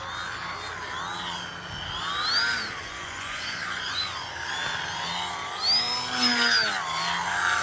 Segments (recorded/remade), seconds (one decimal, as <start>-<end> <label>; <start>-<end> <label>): 0.0-2.8 recorded; 2.8-4.0 remade; 4.0-7.6 recorded